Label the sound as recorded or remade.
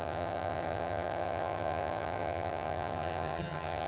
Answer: remade